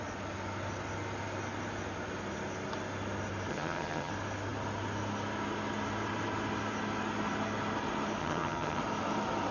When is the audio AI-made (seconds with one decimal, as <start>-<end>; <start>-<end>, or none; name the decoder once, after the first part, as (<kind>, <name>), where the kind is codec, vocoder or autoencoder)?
3.5-4.1 (vocoder, HiFi-GAN); 8.2-8.8

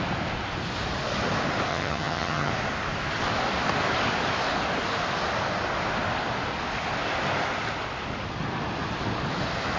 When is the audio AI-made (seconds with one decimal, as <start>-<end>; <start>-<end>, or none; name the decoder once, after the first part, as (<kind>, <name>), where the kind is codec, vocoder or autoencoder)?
1.7-2.5 (vocoder, HiFi-GAN)

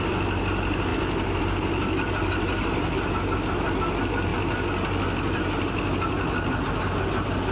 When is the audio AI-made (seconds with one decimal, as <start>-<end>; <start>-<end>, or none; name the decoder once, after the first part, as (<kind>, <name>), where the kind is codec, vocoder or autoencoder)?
none

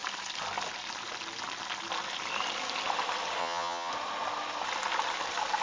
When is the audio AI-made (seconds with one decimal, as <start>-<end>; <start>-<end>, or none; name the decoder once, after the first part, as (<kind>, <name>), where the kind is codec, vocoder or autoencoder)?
3.4-3.9 (vocoder, HiFi-GAN)